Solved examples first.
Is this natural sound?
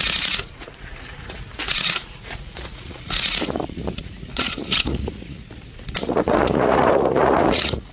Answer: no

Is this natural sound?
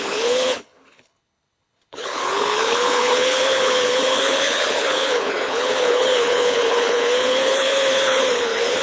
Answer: no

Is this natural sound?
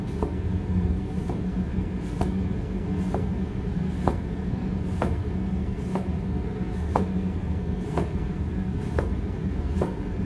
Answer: no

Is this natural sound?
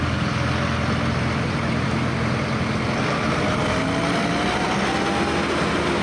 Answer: yes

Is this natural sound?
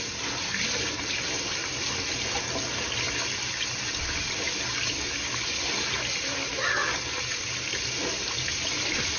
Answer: yes